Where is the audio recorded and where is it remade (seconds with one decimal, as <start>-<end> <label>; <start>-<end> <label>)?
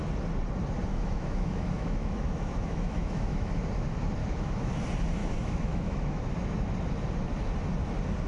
0.0-0.9 recorded; 0.9-3.6 remade; 3.6-4.2 recorded; 4.2-4.7 remade; 4.7-5.2 recorded; 5.2-6.2 remade; 6.2-8.3 recorded